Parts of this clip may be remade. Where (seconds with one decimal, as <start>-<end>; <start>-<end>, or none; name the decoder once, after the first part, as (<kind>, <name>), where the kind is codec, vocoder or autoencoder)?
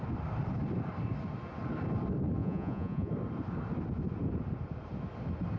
2.4-3.1 (vocoder, Vocos)